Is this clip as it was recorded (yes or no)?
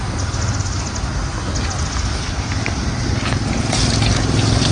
yes